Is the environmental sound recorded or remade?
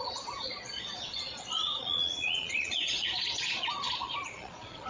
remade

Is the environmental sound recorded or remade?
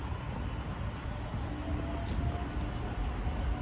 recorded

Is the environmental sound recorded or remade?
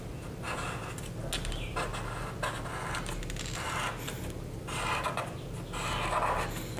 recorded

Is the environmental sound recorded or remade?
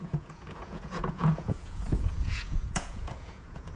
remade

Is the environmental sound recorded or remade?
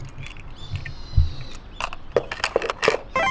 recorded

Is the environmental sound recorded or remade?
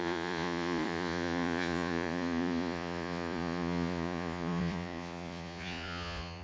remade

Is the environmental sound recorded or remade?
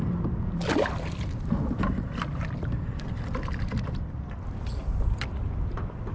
recorded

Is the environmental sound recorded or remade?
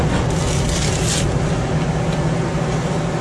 recorded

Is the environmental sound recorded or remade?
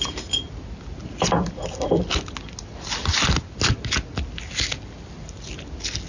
recorded